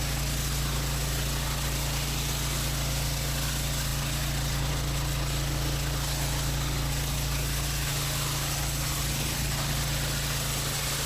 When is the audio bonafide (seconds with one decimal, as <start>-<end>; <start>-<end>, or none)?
0.0-11.1